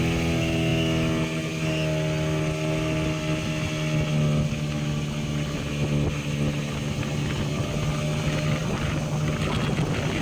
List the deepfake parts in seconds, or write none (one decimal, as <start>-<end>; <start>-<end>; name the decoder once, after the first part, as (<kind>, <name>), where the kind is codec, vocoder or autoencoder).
none